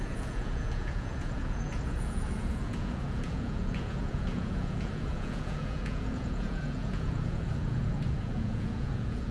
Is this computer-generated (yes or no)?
yes